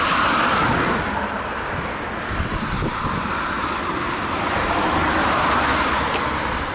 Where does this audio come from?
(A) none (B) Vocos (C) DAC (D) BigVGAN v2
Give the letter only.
D